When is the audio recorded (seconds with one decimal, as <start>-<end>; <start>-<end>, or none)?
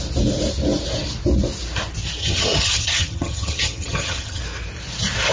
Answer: 0.0-2.2; 4.4-5.3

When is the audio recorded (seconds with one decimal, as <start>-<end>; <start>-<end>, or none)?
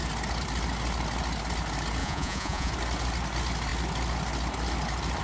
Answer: 0.0-2.0; 2.7-5.2